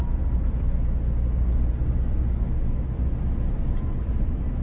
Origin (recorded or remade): recorded